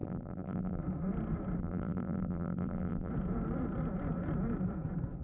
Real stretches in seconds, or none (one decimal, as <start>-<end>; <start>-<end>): 0.8-1.6; 3.1-5.2